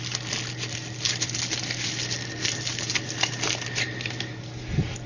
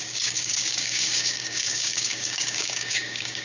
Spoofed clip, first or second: second